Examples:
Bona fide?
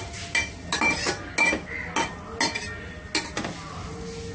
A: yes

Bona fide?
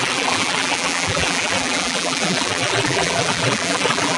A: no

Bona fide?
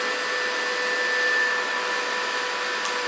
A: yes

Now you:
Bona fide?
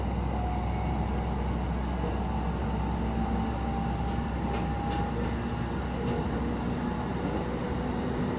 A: yes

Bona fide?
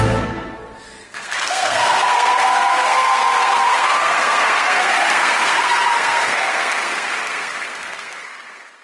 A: no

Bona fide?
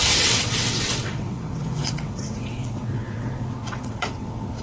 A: no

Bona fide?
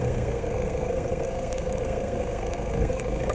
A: no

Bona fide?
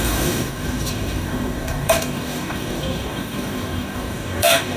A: no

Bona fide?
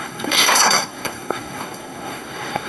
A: no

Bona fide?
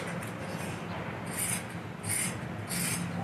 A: yes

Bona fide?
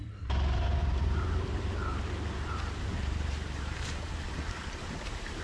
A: no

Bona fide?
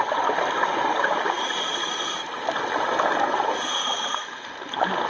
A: yes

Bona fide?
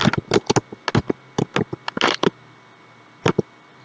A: yes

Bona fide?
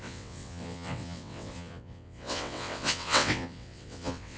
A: no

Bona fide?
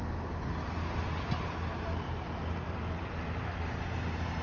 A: yes